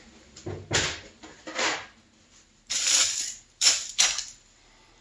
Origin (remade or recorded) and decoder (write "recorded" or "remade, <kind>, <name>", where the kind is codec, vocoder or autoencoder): remade, vocoder, BigVGAN v2